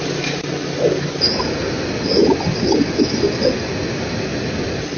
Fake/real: real